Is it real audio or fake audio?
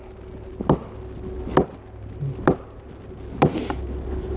real